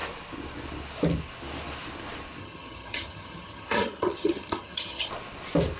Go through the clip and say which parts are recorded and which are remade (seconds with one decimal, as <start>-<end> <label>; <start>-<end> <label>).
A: 0.0-2.4 recorded; 2.4-5.1 remade; 5.1-5.8 recorded